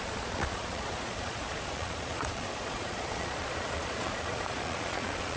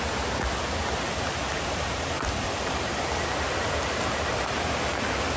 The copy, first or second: first